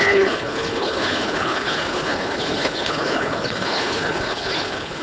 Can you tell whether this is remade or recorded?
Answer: remade